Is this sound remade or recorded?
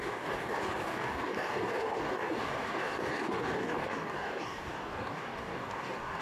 remade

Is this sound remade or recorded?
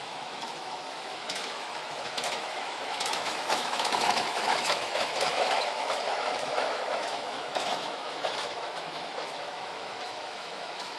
remade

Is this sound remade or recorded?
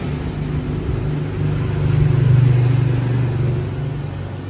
recorded